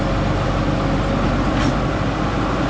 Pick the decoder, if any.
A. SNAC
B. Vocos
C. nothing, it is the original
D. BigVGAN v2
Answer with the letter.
C